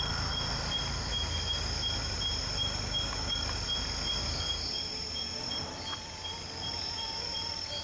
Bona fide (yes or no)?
yes